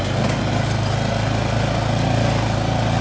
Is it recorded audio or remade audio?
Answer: recorded